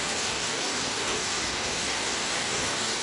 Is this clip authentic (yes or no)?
no